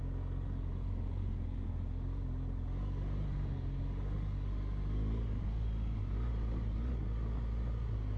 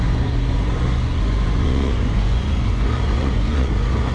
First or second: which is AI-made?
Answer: second